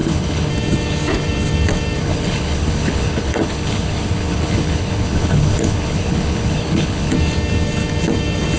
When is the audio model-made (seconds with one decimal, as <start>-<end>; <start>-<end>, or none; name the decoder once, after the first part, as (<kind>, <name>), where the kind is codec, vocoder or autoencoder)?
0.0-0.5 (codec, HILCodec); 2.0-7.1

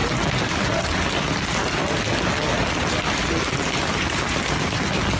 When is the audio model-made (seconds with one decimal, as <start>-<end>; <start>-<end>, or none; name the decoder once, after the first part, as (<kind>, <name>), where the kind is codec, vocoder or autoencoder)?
none

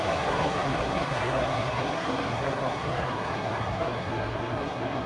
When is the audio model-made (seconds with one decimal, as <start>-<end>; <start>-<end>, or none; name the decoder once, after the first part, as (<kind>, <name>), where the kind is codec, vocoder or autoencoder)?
0.0-5.1 (codec, SNAC)

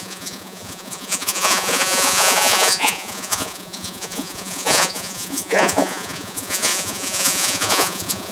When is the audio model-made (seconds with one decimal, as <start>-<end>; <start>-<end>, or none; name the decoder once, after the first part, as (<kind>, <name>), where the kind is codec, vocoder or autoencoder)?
0.0-8.3 (vocoder, Vocos)